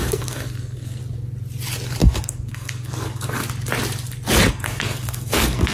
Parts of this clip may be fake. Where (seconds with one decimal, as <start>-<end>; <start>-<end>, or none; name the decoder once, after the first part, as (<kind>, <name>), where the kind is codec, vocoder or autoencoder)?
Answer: 0.0-1.0 (codec, SNAC); 2.0-3.4; 4.5-5.7